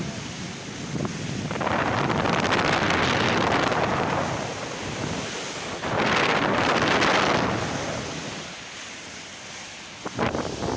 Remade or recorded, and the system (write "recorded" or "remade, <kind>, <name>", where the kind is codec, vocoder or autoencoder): recorded